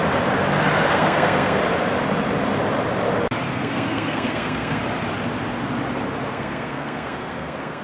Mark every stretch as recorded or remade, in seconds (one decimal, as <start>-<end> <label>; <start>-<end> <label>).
0.0-0.9 recorded; 0.9-1.6 remade; 1.6-3.5 recorded; 3.5-4.8 remade; 4.8-6.3 recorded; 6.3-7.8 remade